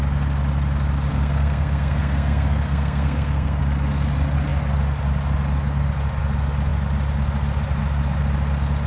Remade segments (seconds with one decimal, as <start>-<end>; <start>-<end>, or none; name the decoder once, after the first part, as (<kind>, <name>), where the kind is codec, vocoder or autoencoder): 1.1-3.6 (codec, SNAC)